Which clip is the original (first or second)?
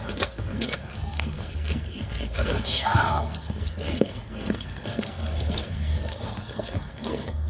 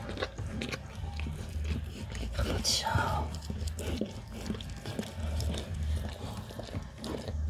second